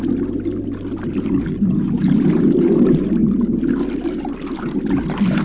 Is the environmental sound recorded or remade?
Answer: recorded